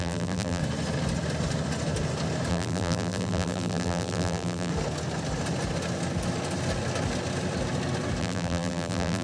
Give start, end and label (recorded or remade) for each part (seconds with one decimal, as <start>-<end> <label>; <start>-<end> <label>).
0.0-0.6 remade; 0.6-2.5 recorded; 2.5-4.7 remade; 4.7-8.2 recorded; 8.2-9.2 remade